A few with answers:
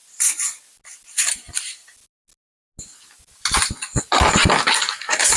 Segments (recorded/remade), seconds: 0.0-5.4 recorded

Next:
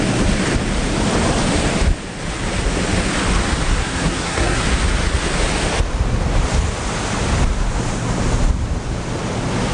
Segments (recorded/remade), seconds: 0.0-3.8 recorded; 3.8-4.6 remade; 4.6-9.7 recorded

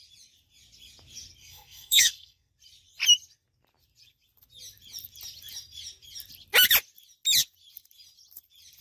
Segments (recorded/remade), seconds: 0.0-1.4 recorded; 1.4-2.5 remade; 2.5-8.8 recorded

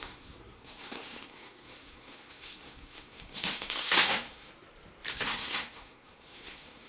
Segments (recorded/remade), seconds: 0.0-4.5 remade; 4.5-5.1 recorded; 5.1-6.9 remade

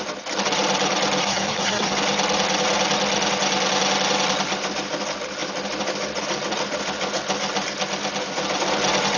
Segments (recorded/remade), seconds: 0.0-1.2 recorded; 1.2-1.9 remade; 1.9-9.2 recorded

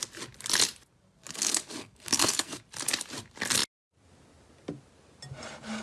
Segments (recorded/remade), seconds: 0.0-1.3 recorded; 1.3-2.6 remade; 2.6-5.8 recorded

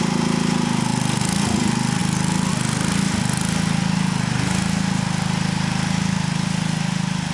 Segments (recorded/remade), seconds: 0.0-7.3 recorded

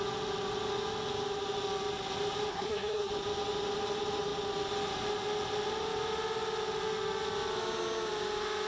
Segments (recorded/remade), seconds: 0.0-2.5 recorded; 2.5-3.1 remade; 3.1-8.7 recorded